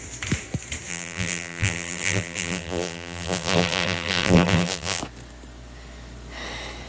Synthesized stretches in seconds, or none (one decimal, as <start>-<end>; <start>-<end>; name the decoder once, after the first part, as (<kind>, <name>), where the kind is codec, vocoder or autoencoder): 0.9-5.0 (vocoder, BigVGAN v2)